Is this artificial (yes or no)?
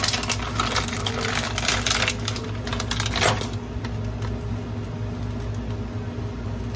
no